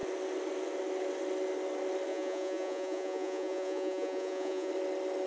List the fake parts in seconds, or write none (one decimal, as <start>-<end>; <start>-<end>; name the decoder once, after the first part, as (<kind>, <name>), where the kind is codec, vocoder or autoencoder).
2.1-4.7 (vocoder, Vocos)